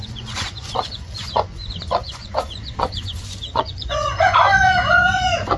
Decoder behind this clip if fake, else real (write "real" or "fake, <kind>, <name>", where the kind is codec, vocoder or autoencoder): fake, vocoder, Vocos